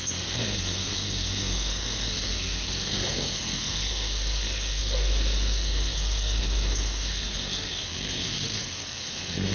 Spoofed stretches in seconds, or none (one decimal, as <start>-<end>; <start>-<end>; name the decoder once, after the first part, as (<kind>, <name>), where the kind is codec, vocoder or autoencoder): 0.0-9.5 (codec, SNAC)